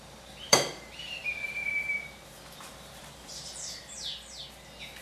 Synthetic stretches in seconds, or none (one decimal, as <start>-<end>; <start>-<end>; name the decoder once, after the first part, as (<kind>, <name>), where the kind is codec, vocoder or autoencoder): 0.0-4.1 (vocoder, BigVGAN v2)